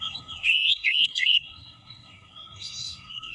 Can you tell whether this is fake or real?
fake